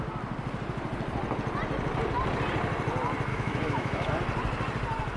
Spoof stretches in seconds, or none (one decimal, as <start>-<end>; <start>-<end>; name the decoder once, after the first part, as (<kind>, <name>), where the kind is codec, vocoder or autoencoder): 3.3-4.1 (autoencoder, DAC-VAE)